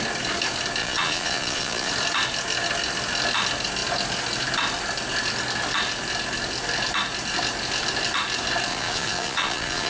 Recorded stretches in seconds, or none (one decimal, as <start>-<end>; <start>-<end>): 0.0-0.8; 1.9-8.7